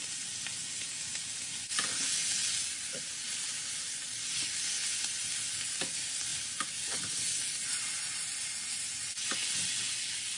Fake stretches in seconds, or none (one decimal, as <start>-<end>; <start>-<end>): 0.0-0.9